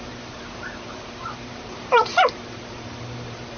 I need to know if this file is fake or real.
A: fake